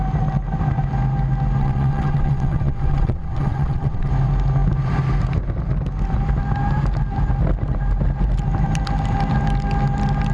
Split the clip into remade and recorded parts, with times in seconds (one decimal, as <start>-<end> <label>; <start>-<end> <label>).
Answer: 0.0-1.6 recorded; 1.6-4.1 remade; 4.1-10.3 recorded